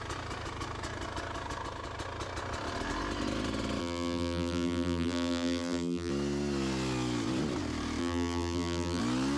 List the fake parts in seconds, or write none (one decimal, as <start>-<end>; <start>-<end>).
3.8-6.1; 8.0-9.0